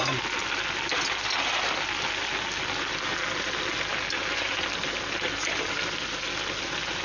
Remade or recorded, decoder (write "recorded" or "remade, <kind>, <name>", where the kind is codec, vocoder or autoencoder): recorded